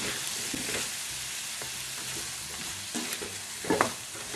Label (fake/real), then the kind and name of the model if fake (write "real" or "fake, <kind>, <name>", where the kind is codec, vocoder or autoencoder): real